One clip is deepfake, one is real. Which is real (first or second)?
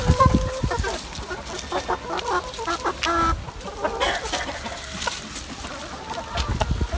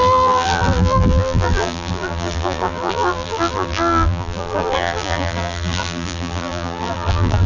first